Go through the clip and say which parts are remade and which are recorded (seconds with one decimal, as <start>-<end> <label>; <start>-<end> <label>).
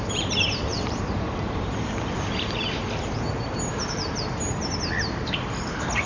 0.0-6.1 remade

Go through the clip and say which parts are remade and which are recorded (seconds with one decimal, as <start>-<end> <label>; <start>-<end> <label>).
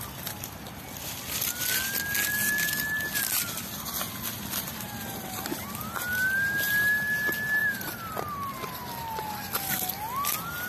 0.0-7.6 recorded; 7.6-9.7 remade; 9.7-10.7 recorded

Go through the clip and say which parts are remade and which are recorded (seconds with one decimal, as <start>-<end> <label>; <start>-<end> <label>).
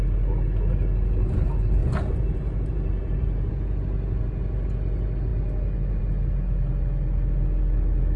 0.0-1.8 recorded; 1.8-3.5 remade; 3.5-8.2 recorded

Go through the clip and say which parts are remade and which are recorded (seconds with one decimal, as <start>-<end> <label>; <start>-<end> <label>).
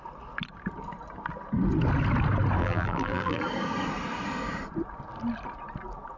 0.0-2.6 recorded; 2.6-3.4 remade; 3.4-6.2 recorded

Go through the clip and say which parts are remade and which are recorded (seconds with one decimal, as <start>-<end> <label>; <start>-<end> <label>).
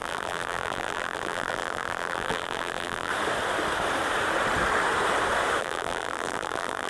0.0-3.1 remade; 3.1-5.6 recorded; 5.6-6.9 remade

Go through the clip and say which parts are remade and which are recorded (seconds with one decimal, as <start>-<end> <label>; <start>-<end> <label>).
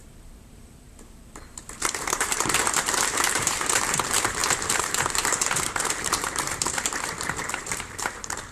0.0-8.5 remade